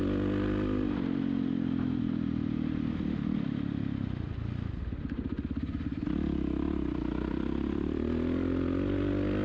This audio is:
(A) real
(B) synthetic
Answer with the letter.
B